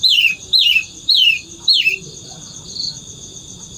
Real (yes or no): no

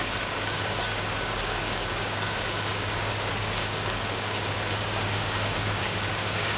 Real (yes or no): no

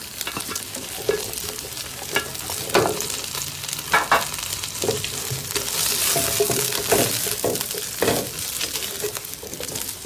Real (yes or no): yes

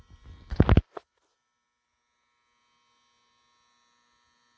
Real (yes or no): yes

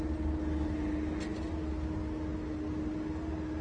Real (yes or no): yes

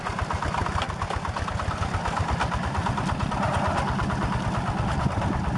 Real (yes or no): yes